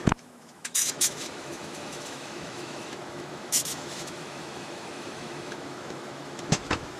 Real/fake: fake